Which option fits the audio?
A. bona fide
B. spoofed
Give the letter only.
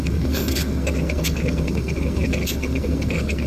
B